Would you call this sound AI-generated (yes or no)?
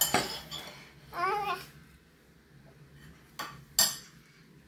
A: no